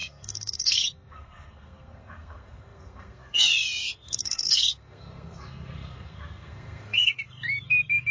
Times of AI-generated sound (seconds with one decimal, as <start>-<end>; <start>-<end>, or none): 0.0-8.1